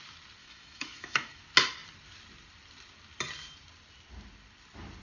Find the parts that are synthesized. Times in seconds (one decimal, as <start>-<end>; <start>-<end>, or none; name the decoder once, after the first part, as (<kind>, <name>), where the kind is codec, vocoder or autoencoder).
0.4-1.4 (autoencoder, DAC-VAE)